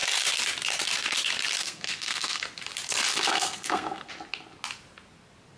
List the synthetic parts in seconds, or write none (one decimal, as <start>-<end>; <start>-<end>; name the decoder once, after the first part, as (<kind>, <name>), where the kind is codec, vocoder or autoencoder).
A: 1.6-2.4 (codec, SNAC); 3.1-4.1